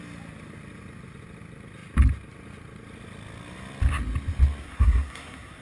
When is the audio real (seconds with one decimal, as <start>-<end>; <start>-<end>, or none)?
0.0-4.6